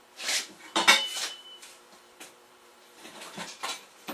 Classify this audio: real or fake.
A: fake